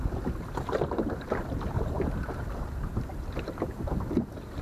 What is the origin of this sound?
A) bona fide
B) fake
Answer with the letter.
A